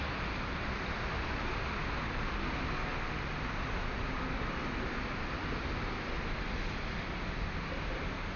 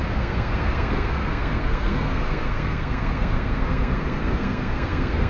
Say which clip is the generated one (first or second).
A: second